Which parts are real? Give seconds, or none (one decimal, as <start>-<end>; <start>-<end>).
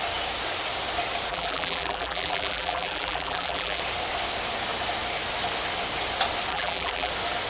0.0-1.3; 3.8-6.5; 7.1-7.5